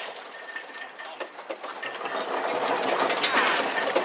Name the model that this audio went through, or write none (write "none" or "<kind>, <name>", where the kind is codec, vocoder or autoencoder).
none